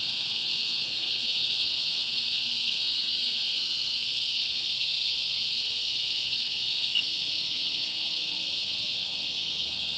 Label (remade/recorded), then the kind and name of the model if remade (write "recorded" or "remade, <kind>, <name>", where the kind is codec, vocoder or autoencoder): remade, codec, SNAC